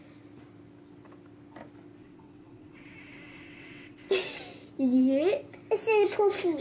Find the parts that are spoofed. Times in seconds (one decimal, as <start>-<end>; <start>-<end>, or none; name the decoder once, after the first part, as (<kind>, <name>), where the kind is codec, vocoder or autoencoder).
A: 2.0-4.4 (vocoder, WaveNeXt)